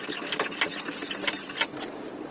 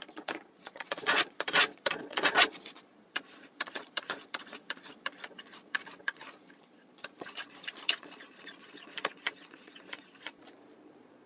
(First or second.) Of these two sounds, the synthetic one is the second